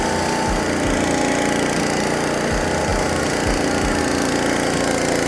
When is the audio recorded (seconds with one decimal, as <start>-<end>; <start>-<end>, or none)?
0.0-5.3